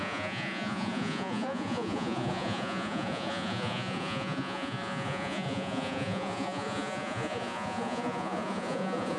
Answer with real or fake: fake